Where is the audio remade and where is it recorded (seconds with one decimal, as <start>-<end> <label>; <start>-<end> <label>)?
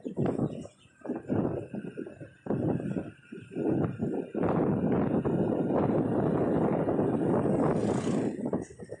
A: 0.0-9.0 recorded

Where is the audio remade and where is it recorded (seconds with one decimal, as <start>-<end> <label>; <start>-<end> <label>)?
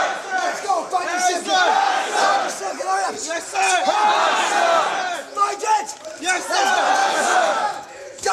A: 0.0-7.0 recorded; 7.0-8.3 remade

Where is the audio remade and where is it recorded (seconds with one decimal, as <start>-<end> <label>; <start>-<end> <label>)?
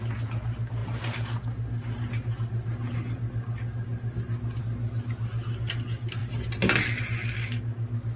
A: 0.0-8.2 recorded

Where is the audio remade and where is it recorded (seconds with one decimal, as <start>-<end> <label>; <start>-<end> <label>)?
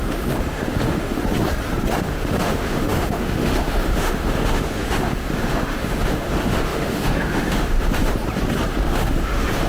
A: 0.0-1.2 remade; 1.2-1.9 recorded; 1.9-8.0 remade; 8.0-8.7 recorded; 8.7-9.7 remade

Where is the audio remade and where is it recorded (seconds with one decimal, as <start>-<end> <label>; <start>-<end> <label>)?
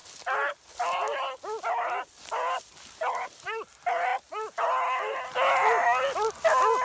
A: 0.0-6.8 recorded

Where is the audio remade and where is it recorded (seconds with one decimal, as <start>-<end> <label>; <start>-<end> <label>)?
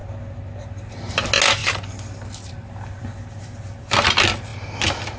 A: 0.0-5.2 recorded